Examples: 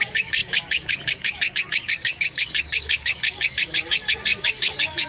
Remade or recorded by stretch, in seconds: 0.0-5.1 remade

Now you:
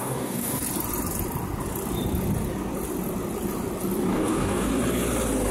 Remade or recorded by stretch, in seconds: 0.0-0.6 remade; 0.6-4.1 recorded; 4.1-4.7 remade; 4.7-5.5 recorded

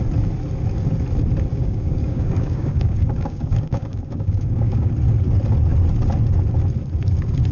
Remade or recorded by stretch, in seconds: 0.0-1.5 recorded; 1.5-4.9 remade; 4.9-7.5 recorded

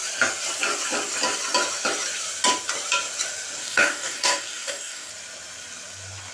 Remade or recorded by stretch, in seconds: 0.0-3.6 recorded; 3.6-5.1 remade; 5.1-6.3 recorded

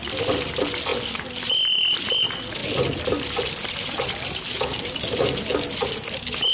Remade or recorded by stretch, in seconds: 0.0-6.5 recorded

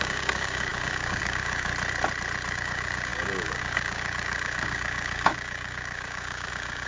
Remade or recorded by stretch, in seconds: 0.0-1.7 remade; 1.7-2.5 recorded; 2.5-6.9 remade

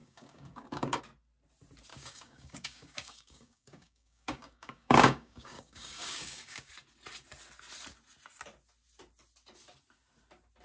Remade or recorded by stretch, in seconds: 0.0-1.0 remade; 1.0-1.9 recorded; 1.9-6.7 remade; 6.7-10.6 recorded